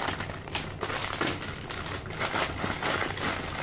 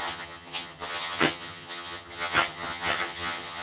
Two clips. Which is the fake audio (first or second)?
second